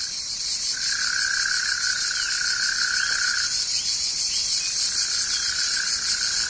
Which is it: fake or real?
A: real